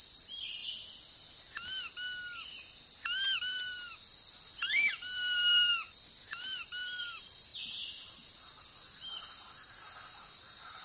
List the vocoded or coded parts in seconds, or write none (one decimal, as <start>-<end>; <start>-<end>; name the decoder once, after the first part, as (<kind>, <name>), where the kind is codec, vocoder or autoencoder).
0.0-0.6 (vocoder, BigVGAN v2); 3.4-5.7; 6.2-10.8